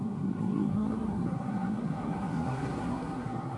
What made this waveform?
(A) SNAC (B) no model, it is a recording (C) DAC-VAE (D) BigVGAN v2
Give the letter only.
A